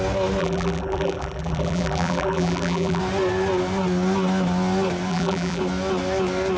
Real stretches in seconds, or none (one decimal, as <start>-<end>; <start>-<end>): 0.0-0.4; 3.0-5.1; 5.6-6.6